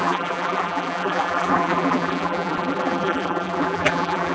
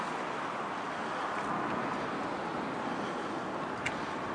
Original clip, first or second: second